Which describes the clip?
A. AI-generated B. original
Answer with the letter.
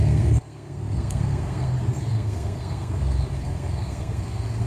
A